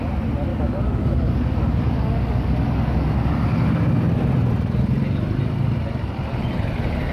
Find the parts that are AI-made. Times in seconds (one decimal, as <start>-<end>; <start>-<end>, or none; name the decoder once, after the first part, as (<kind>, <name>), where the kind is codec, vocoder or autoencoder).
0.5-3.3 (codec, DAC)